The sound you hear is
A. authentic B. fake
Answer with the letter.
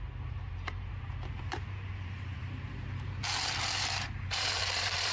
B